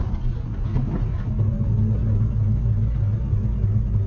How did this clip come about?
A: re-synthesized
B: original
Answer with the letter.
B